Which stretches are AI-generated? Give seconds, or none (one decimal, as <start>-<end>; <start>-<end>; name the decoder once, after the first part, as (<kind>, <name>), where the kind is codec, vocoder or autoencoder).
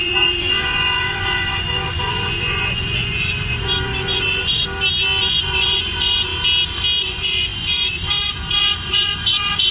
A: 0.0-4.6 (vocoder, Vocos); 5.2-6.3; 7.0-9.7